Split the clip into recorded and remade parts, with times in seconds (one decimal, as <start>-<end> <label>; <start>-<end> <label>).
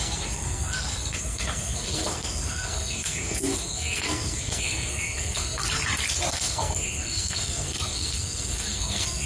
0.0-5.6 remade; 5.6-6.3 recorded; 6.3-9.3 remade